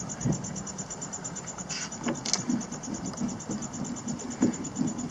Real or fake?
real